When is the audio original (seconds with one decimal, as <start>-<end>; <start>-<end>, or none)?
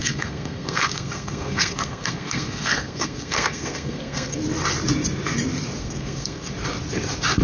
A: 4.4-5.8; 6.5-7.4